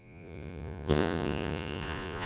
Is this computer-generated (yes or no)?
yes